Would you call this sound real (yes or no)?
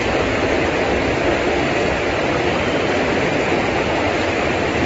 yes